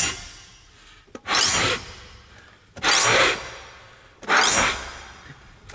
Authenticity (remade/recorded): recorded